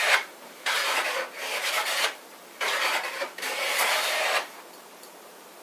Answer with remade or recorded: remade